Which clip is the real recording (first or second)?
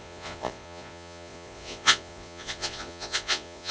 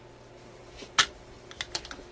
second